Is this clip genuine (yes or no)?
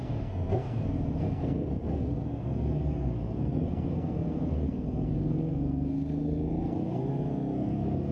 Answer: no